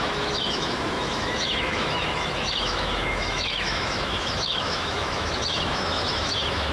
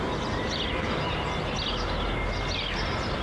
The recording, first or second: second